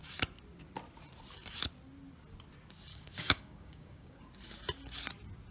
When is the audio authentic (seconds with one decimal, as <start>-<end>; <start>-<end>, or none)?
0.0-2.9; 4.2-5.5